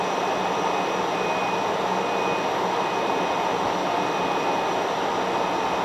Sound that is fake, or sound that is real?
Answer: real